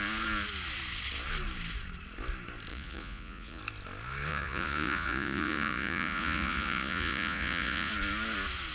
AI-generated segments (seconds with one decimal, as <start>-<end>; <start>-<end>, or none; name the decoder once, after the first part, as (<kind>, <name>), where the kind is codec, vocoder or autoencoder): 2.7-3.6 (vocoder, Vocos); 4.3-7.9